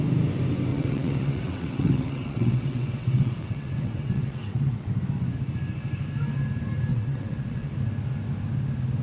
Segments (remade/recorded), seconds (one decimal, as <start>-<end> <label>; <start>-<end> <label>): 0.0-0.7 recorded; 0.7-4.9 remade; 4.9-6.9 recorded; 6.9-7.7 remade; 7.7-9.0 recorded